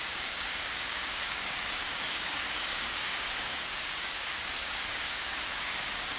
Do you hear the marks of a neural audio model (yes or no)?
yes